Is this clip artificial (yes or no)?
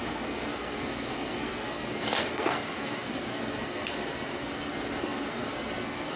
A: yes